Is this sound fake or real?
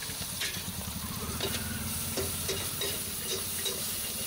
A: real